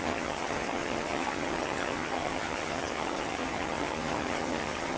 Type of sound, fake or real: fake